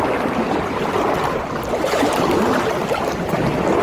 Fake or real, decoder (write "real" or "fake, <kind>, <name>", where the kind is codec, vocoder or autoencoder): real